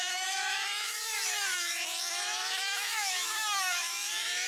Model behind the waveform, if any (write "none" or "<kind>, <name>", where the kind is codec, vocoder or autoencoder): autoencoder, DAC-VAE